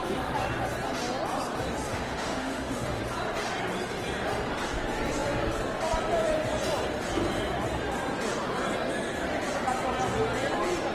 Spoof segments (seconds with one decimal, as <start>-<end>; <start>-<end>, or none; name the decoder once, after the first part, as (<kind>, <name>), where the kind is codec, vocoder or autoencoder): 1.9-3.0 (autoencoder, DAC-VAE)

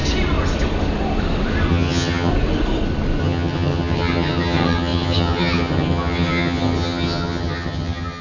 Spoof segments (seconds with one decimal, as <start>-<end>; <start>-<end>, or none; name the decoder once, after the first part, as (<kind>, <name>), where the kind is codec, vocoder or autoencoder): 1.7-2.3 (vocoder, HiFi-GAN); 3.2-8.2